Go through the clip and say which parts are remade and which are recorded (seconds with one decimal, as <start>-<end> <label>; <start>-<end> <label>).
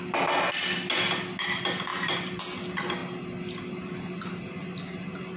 0.0-1.9 recorded; 1.9-2.4 remade; 2.4-5.4 recorded